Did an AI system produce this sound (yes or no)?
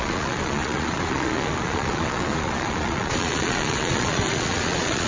yes